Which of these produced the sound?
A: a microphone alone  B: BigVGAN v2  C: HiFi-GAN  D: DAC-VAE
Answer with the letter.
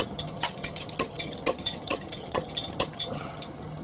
C